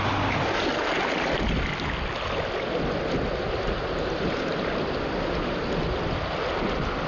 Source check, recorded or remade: recorded